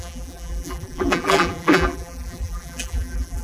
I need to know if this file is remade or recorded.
remade